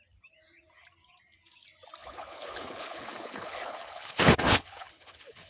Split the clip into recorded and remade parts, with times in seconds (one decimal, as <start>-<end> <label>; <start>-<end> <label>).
0.0-2.0 recorded; 2.0-5.5 remade